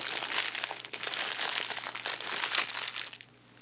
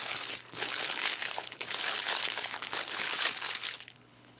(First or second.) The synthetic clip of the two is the second